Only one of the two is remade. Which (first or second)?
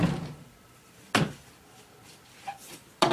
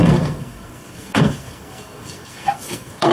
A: second